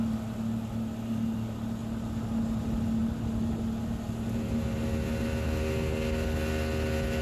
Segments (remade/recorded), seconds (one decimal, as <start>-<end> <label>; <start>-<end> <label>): 0.0-7.2 recorded